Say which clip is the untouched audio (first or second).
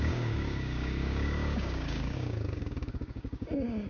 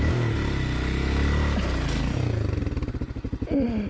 second